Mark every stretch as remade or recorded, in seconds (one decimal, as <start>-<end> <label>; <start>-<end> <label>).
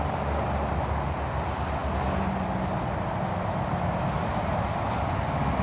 0.0-5.6 recorded